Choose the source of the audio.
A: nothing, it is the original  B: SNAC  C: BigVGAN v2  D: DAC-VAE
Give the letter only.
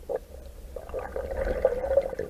A